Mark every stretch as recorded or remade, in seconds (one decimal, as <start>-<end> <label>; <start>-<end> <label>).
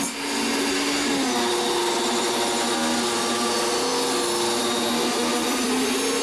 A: 0.0-6.2 recorded